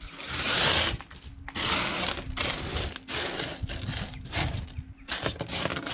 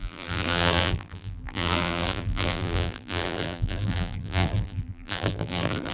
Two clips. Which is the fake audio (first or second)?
second